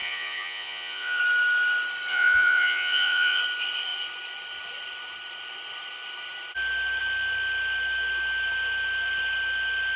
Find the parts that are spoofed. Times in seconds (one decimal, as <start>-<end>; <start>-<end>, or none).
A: 0.0-1.2; 2.1-3.4